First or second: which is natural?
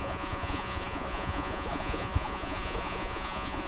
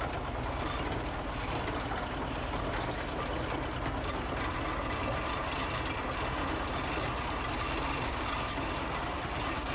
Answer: second